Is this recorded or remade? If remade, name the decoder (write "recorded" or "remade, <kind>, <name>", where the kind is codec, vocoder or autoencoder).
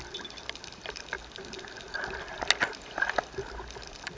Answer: recorded